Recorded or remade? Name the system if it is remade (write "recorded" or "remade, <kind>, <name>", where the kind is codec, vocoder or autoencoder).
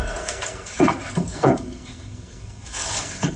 remade, codec, SNAC